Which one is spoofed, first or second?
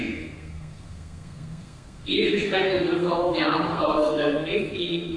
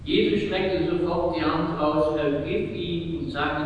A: first